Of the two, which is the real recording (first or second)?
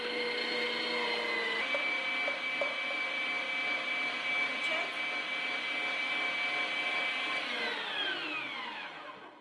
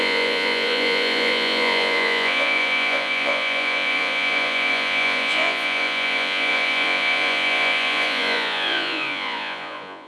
first